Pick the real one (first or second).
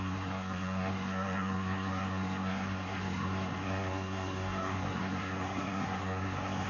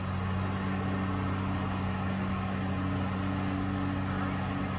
second